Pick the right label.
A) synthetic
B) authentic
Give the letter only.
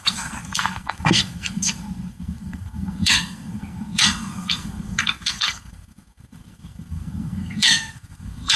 A